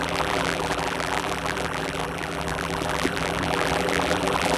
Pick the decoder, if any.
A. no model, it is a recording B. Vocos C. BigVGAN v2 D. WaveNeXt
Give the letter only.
C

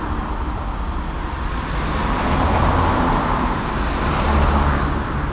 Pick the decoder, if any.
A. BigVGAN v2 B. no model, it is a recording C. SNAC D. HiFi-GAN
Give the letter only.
B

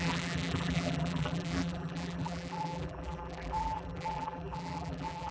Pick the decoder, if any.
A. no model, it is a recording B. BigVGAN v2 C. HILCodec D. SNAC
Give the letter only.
B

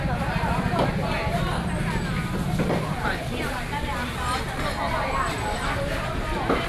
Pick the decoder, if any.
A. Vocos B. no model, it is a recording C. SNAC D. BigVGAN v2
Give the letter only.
B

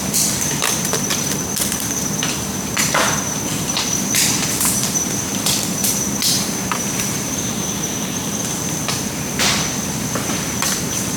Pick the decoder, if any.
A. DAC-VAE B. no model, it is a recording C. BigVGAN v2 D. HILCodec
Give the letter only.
C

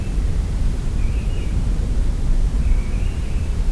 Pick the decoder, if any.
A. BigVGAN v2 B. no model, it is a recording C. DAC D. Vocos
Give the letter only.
A